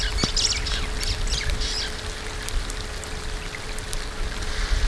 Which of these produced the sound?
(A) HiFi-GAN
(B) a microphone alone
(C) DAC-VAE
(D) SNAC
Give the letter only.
B